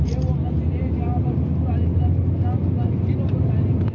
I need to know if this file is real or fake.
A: real